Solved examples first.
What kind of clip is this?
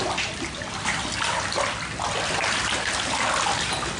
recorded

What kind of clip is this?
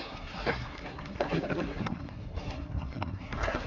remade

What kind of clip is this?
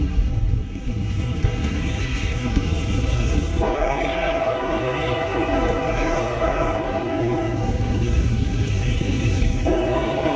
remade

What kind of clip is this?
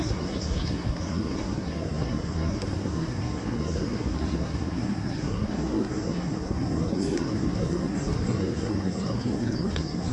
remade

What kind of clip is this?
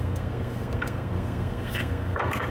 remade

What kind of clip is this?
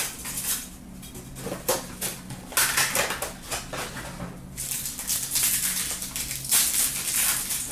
recorded